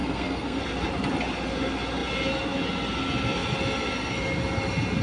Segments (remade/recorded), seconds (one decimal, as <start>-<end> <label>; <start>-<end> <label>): 0.0-0.6 remade; 0.6-5.0 recorded